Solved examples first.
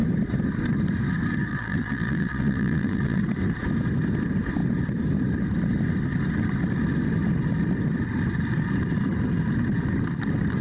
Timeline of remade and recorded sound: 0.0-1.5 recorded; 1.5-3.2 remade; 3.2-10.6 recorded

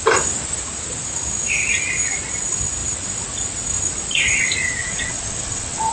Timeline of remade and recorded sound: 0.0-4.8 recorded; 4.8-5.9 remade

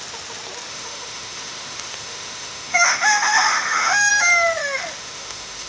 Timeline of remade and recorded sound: 0.0-0.7 recorded; 0.7-4.1 remade; 4.1-4.6 recorded; 4.6-5.7 remade

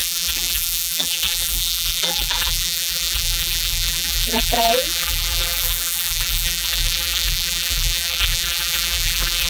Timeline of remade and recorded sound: 0.0-9.5 remade

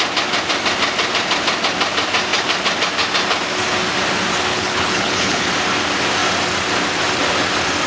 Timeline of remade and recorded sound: 0.0-4.5 recorded; 4.5-5.5 remade; 5.5-7.9 recorded

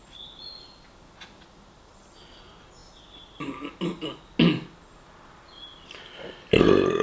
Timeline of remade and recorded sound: 0.0-7.0 recorded

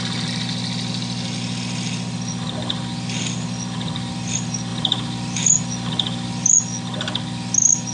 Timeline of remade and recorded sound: 0.0-7.9 recorded

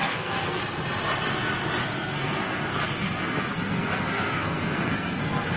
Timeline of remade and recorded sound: 0.0-0.6 remade; 0.6-1.8 recorded; 1.8-5.6 remade